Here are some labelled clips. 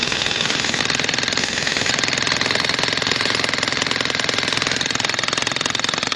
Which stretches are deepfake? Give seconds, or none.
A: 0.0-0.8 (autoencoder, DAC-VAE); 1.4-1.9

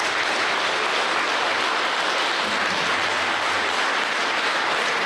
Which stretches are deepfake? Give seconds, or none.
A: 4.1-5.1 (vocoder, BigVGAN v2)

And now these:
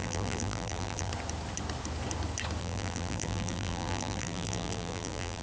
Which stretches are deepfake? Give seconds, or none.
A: 0.0-1.1 (vocoder, BigVGAN v2); 2.6-5.4

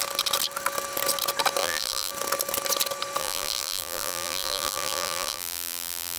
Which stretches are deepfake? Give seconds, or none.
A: 1.6-2.1 (vocoder, BigVGAN v2); 3.2-6.2

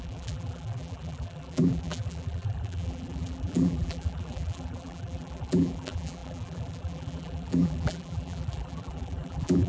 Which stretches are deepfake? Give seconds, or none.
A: 0.0-9.7 (vocoder, BigVGAN v2)